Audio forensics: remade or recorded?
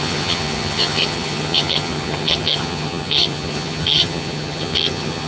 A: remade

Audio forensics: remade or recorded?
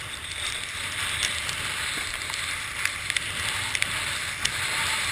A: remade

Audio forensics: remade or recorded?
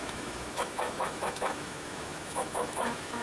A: remade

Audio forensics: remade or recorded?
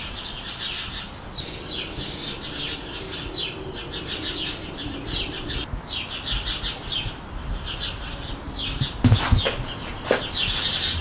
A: recorded